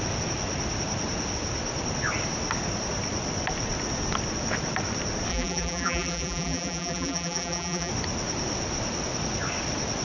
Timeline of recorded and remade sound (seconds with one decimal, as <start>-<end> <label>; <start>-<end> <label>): 0.0-5.3 recorded; 5.3-7.9 remade; 7.9-10.0 recorded